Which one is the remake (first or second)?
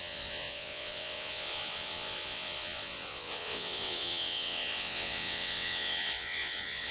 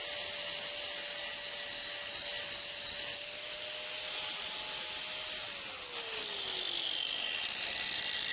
first